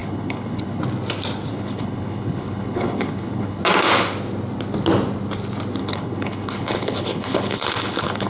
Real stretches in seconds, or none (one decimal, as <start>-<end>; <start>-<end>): 0.8-1.5; 3.6-5.8